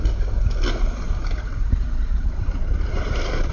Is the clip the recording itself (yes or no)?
yes